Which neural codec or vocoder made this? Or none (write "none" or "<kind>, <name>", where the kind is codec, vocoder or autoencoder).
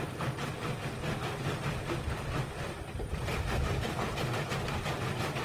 none